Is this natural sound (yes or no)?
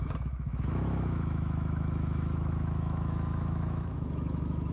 no